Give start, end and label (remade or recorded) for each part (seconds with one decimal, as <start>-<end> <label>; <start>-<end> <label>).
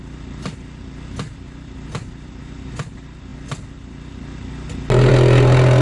0.0-5.8 recorded